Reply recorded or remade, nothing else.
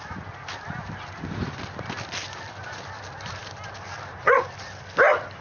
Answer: recorded